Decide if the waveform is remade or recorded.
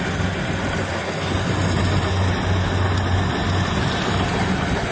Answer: recorded